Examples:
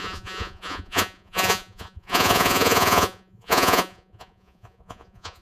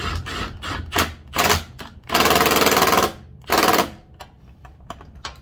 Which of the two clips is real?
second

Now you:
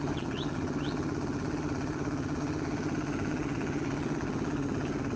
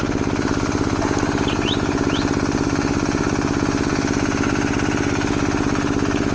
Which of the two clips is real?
second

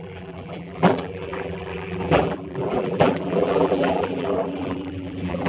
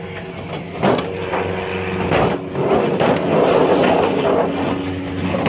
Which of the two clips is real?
second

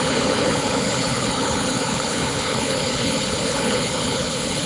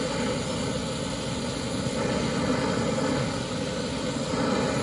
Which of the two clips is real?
second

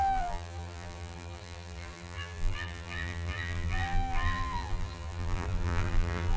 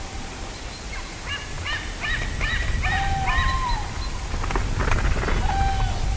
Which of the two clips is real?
second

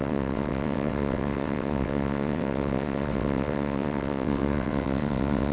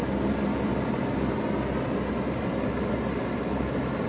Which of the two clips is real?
second